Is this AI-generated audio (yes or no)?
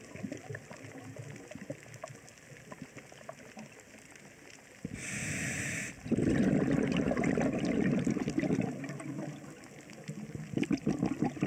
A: no